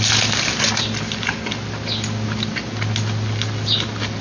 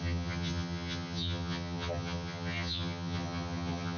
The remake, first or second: second